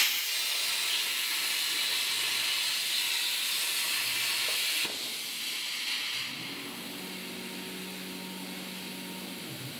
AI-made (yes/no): no